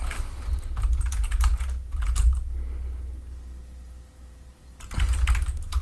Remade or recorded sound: recorded